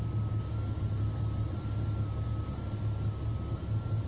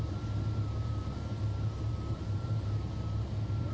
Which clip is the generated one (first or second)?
second